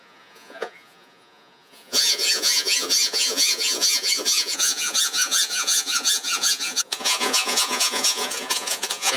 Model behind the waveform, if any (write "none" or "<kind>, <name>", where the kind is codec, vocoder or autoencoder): vocoder, Vocos